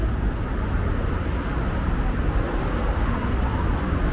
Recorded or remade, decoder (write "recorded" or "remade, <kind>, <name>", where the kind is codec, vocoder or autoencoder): recorded